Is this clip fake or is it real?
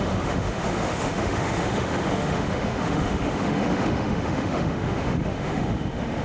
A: fake